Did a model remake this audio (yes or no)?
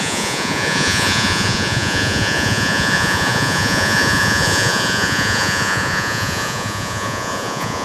yes